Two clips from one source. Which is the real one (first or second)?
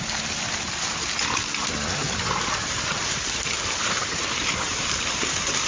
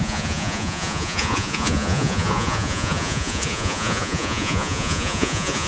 first